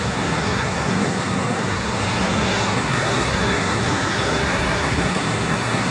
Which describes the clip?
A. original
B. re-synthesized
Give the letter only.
B